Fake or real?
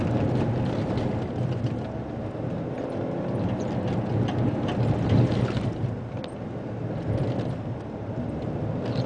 real